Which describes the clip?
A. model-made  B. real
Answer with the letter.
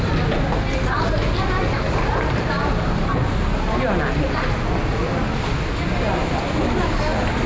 B